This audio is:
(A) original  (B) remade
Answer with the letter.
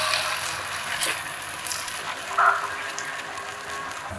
A